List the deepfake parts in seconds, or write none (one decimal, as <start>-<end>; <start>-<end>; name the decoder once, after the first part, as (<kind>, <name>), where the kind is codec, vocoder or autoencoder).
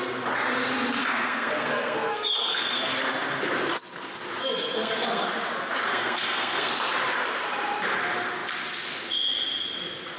1.0-2.8 (codec, SNAC); 4.4-5.3; 5.9-6.7